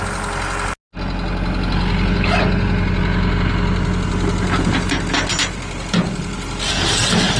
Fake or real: real